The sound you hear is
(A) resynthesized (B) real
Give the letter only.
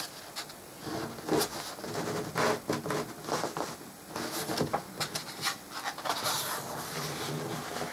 B